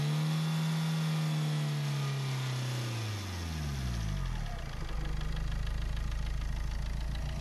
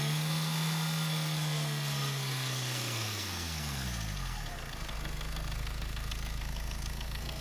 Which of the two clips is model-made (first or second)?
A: second